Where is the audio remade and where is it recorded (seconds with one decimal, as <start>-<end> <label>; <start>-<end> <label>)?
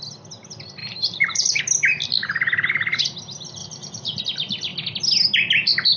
0.0-0.8 recorded; 0.8-1.6 remade; 1.6-3.6 recorded; 3.6-4.2 remade; 4.2-6.0 recorded